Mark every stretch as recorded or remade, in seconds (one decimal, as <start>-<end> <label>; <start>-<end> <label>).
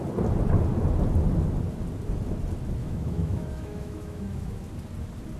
0.0-2.8 recorded; 2.8-4.6 remade; 4.6-5.4 recorded